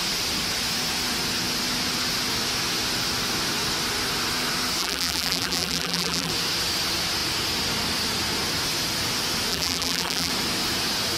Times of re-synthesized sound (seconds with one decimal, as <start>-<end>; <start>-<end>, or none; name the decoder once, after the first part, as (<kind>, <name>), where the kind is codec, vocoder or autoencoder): 4.8-6.3 (vocoder, BigVGAN v2); 9.5-10.3